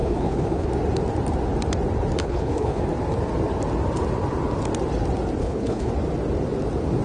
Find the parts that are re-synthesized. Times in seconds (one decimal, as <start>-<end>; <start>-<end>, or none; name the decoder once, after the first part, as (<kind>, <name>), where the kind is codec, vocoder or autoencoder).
0.0-0.7 (codec, HILCodec); 2.2-2.8; 5.4-5.9